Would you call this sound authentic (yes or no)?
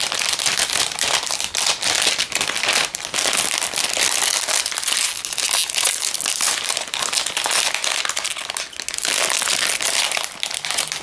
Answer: yes